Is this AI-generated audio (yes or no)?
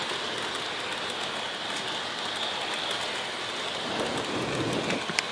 no